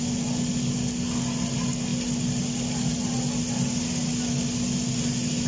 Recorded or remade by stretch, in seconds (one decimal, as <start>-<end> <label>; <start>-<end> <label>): 0.0-5.5 recorded